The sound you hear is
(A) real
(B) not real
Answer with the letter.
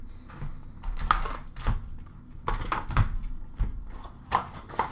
A